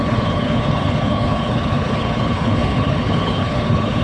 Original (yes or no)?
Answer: no